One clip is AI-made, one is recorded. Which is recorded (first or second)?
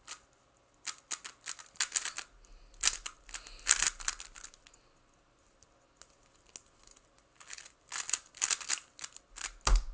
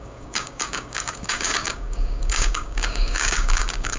first